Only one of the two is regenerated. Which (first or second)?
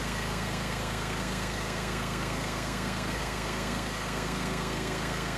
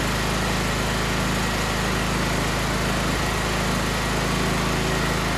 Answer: first